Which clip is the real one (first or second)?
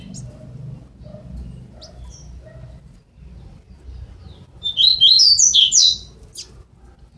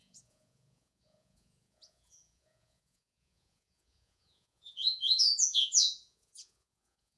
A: first